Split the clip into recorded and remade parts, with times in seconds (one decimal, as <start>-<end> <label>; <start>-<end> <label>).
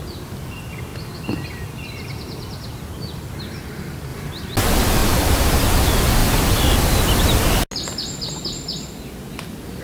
0.0-5.0 recorded; 5.0-5.6 remade; 5.6-6.2 recorded; 6.2-7.4 remade; 7.4-9.8 recorded